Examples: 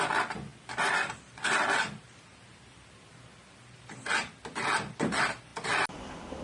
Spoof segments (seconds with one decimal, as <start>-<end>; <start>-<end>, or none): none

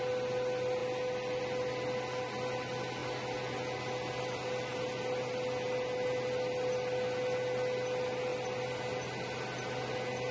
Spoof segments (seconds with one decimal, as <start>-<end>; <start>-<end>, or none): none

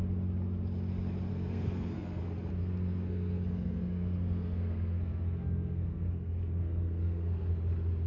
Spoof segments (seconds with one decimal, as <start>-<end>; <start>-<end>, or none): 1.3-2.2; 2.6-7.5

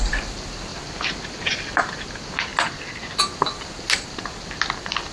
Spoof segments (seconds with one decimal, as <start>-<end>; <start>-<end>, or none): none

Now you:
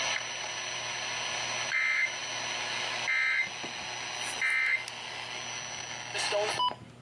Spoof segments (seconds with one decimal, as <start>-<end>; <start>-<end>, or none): none